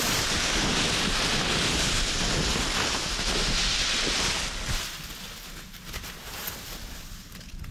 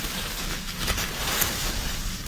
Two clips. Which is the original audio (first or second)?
first